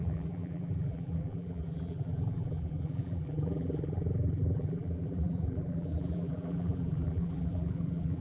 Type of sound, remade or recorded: remade